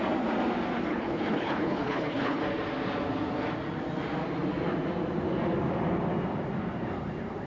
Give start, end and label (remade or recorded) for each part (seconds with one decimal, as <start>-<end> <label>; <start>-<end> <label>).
0.0-0.9 recorded; 0.9-2.4 remade; 2.4-7.5 recorded